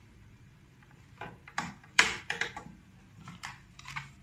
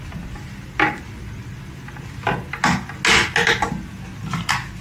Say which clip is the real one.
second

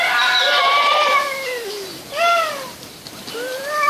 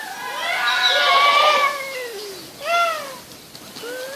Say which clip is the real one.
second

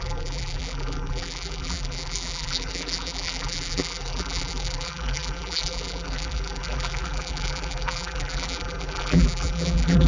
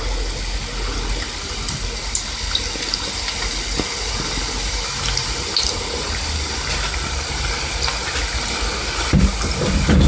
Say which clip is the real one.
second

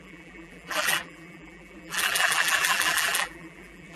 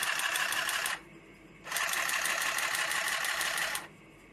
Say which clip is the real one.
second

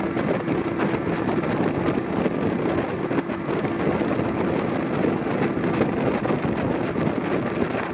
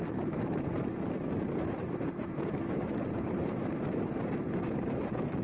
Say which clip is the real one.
first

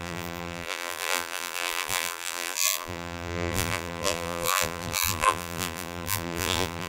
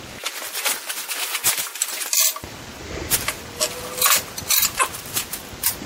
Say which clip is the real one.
second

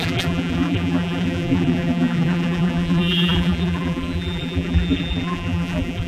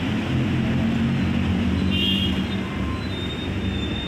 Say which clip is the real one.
second